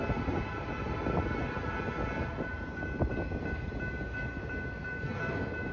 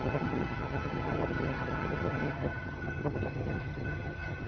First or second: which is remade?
second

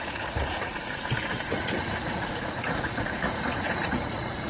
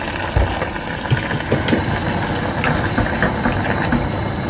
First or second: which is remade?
first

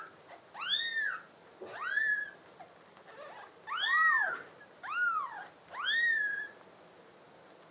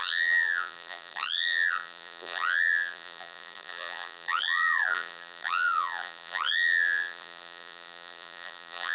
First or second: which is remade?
second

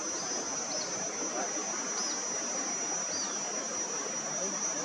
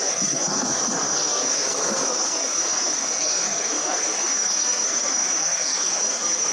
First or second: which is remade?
second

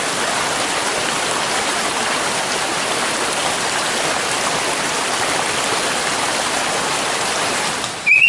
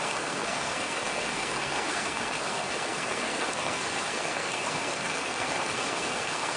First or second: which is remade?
second